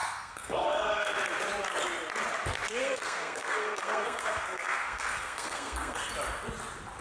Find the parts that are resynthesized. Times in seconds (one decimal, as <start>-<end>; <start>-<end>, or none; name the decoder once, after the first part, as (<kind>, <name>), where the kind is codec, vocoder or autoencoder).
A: 0.0-1.1 (codec, SNAC); 2.8-6.1